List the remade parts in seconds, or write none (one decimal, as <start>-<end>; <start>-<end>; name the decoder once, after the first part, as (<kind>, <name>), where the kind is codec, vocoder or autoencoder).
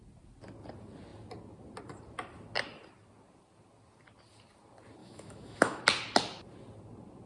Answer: 5.0-5.8 (autoencoder, DAC-VAE)